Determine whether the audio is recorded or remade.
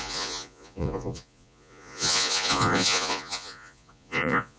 remade